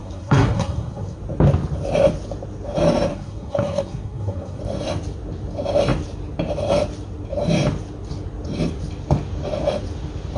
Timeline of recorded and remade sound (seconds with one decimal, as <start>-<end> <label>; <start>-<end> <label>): 0.0-1.2 remade; 1.2-3.1 recorded; 3.1-4.6 remade; 4.6-10.4 recorded